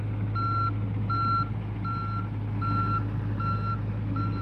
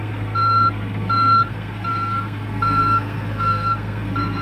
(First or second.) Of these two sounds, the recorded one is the first